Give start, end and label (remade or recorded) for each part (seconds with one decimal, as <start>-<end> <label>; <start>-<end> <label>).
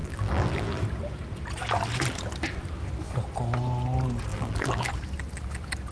0.0-0.8 remade; 0.8-4.3 recorded; 4.3-4.9 remade; 4.9-5.9 recorded